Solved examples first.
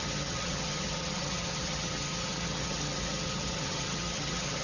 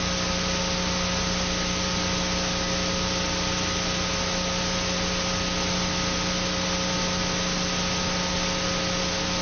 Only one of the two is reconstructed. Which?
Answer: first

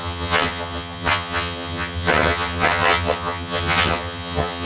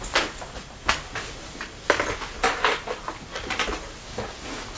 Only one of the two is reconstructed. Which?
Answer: first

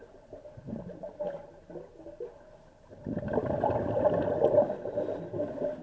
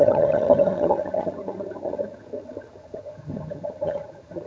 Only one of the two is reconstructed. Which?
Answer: second